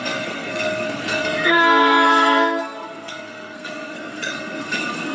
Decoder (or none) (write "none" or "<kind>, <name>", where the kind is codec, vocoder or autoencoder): codec, SNAC